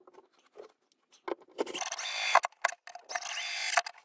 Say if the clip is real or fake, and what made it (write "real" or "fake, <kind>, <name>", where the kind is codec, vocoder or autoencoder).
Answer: real